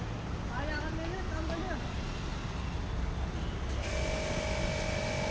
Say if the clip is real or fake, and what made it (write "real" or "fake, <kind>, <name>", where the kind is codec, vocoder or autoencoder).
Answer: real